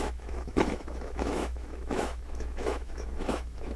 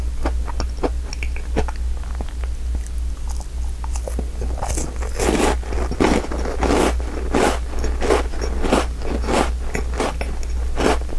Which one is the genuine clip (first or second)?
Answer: second